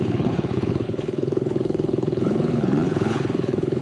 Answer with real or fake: fake